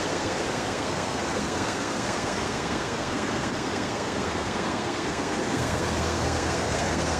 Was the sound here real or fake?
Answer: fake